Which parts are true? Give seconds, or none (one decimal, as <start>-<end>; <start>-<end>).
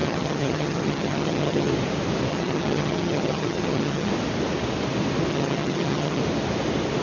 1.7-2.3; 4.1-5.3; 6.2-7.0